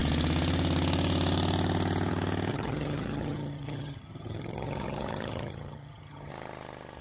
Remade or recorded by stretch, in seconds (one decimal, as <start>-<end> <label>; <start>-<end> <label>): 0.0-2.5 recorded; 2.5-6.3 remade; 6.3-7.0 recorded